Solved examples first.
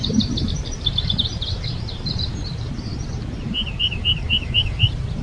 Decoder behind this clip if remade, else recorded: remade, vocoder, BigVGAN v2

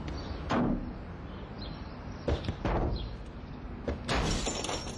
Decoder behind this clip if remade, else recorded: recorded